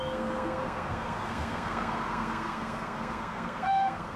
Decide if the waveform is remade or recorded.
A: remade